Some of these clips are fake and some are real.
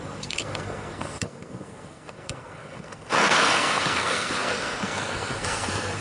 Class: fake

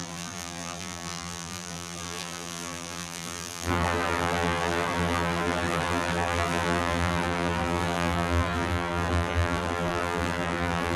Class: fake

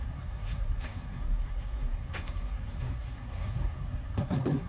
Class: fake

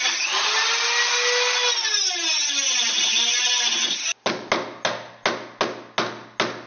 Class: real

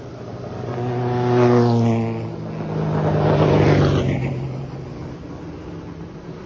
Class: real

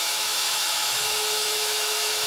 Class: fake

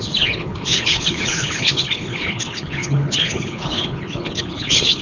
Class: fake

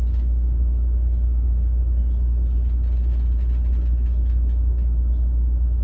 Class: real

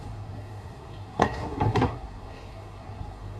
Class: fake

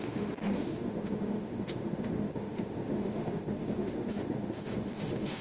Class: fake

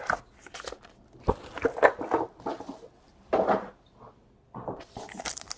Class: real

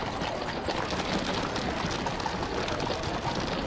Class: real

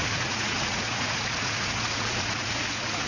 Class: fake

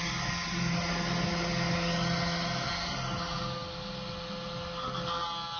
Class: real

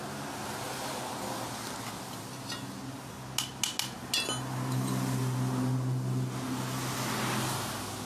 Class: real